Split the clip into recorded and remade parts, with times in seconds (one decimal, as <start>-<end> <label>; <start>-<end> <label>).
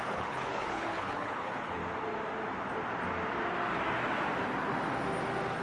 0.0-1.8 remade; 1.8-5.6 recorded